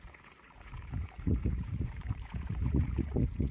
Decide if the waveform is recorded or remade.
remade